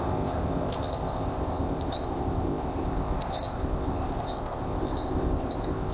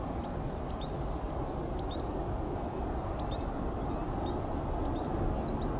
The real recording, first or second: second